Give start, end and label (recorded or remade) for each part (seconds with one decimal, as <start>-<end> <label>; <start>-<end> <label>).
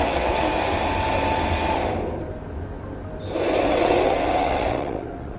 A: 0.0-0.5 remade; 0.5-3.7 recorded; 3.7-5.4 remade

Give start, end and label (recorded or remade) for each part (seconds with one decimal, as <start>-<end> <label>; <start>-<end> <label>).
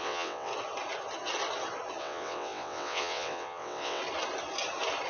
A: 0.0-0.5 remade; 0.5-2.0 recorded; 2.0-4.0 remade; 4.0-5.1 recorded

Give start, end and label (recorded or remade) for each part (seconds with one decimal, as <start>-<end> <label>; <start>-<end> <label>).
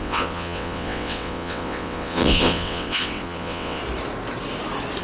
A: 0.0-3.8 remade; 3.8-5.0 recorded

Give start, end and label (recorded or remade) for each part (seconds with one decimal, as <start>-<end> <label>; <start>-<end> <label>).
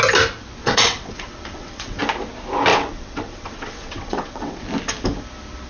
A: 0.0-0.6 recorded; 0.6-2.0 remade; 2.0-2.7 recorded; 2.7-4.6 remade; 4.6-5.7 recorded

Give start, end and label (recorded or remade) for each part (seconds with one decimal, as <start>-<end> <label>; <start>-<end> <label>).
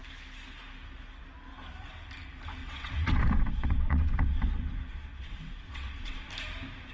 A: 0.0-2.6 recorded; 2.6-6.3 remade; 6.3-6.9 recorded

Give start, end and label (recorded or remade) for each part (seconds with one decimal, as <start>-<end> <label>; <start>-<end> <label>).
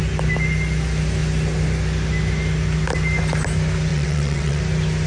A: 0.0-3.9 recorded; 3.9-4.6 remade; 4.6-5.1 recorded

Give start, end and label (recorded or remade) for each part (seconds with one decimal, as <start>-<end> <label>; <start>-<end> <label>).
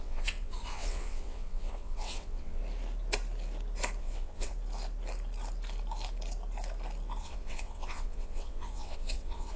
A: 0.0-2.6 remade; 2.6-4.0 recorded; 4.0-4.5 remade; 4.5-7.2 recorded; 7.2-9.6 remade